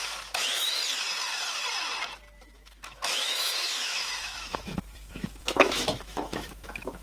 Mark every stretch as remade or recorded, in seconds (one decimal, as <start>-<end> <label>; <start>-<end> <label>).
0.0-0.8 remade; 0.8-2.4 recorded; 2.4-7.0 remade